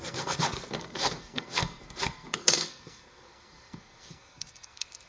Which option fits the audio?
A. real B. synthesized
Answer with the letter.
B